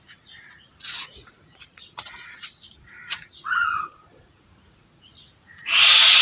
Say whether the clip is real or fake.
fake